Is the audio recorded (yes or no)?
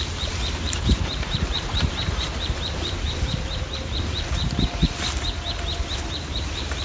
no